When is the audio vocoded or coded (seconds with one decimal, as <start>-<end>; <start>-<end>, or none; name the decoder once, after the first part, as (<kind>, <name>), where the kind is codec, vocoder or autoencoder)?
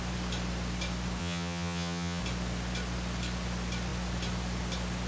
1.2-2.2 (vocoder, HiFi-GAN)